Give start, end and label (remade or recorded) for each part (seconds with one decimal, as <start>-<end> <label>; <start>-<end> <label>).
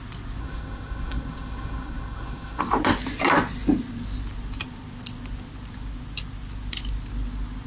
0.0-0.4 recorded; 0.4-2.6 remade; 2.6-7.7 recorded